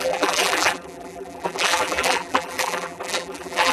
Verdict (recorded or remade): remade